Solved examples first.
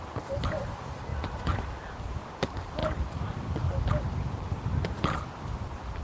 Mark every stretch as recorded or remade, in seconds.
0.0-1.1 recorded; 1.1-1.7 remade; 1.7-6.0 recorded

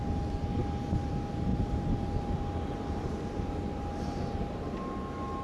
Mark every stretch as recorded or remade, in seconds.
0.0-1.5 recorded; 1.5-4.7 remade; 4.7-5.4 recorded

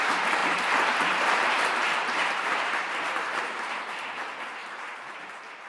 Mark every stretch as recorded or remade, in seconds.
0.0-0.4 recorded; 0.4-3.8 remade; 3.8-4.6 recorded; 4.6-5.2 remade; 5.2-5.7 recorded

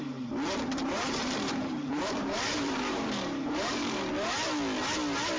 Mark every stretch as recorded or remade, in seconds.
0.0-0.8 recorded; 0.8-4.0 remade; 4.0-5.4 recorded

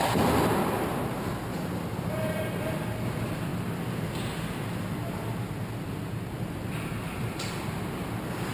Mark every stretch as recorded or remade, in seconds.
0.0-3.5 remade; 3.5-6.3 recorded; 6.3-8.5 remade

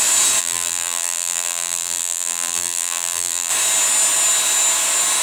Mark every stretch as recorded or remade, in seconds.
0.0-0.4 recorded; 0.4-3.5 remade; 3.5-5.2 recorded

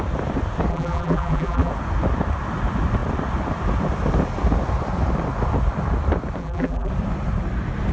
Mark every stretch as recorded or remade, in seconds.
0.0-0.7 recorded; 0.7-1.7 remade; 1.7-6.4 recorded; 6.4-6.9 remade; 6.9-7.9 recorded

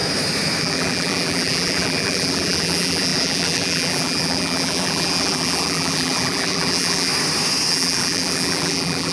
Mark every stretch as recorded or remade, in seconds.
0.0-0.6 recorded; 0.6-7.1 remade; 7.1-7.7 recorded; 7.7-9.1 remade